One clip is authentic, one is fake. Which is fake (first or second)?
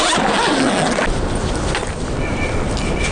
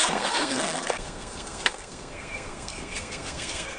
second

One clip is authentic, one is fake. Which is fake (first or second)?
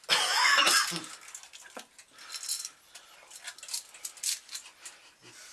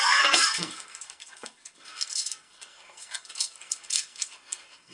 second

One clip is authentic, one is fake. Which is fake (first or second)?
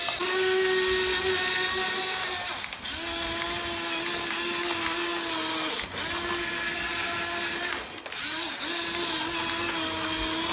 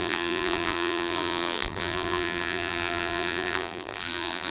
second